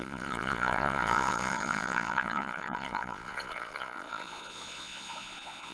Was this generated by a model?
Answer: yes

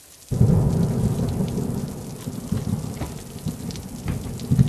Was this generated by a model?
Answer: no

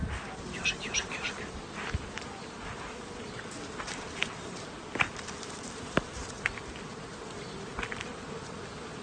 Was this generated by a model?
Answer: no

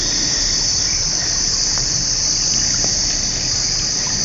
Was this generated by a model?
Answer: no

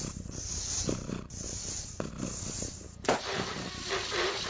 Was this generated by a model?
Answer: yes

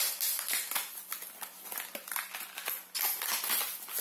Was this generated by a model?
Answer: no